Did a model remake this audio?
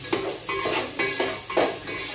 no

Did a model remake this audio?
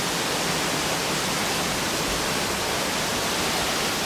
no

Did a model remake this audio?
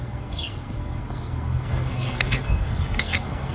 yes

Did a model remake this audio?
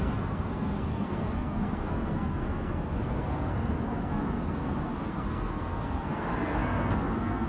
yes